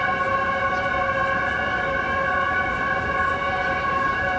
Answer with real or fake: fake